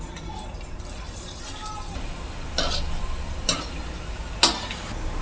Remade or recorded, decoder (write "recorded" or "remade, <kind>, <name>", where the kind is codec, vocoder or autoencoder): recorded